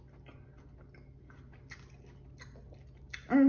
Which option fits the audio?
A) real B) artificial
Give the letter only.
A